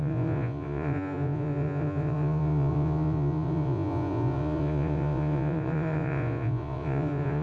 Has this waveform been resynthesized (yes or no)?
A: yes